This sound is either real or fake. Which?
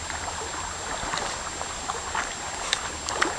real